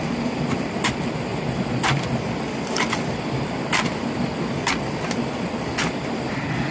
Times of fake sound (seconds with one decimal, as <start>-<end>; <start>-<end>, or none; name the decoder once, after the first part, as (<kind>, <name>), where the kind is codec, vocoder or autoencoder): none